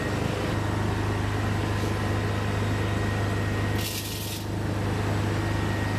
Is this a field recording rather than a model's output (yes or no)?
yes